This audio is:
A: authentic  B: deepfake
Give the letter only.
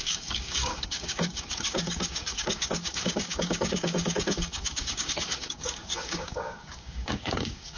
B